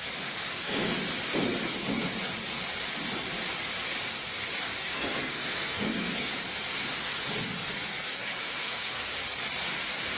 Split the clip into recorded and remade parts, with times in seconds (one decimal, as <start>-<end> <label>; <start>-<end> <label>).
0.0-0.5 recorded; 0.5-1.0 remade; 1.0-4.8 recorded; 4.8-6.3 remade; 6.3-7.9 recorded; 7.9-9.1 remade; 9.1-10.2 recorded